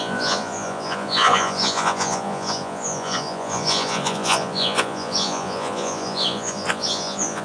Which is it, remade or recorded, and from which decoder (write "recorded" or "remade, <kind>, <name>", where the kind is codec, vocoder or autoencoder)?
remade, vocoder, Vocos